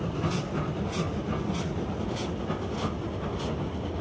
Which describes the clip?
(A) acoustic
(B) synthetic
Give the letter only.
A